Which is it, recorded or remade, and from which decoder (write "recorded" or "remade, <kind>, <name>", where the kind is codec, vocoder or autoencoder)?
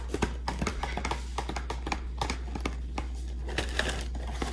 recorded